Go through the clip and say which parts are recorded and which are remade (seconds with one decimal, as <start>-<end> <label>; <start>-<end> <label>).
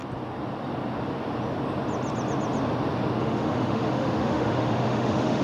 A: 0.0-3.2 recorded; 3.2-5.4 remade